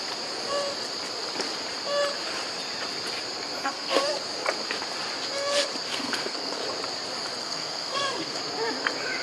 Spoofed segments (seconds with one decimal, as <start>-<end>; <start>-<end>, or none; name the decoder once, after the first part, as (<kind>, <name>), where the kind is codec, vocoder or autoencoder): 3.6-4.2 (codec, SNAC); 5.9-6.6; 7.4-8.4